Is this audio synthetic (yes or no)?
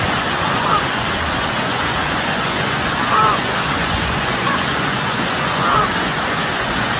yes